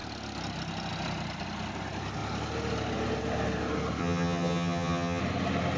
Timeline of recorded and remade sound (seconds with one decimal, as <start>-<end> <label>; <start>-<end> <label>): 0.0-4.0 recorded; 4.0-5.2 remade; 5.2-5.8 recorded